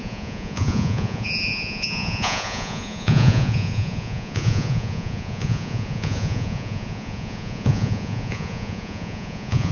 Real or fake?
fake